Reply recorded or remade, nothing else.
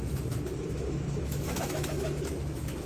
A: remade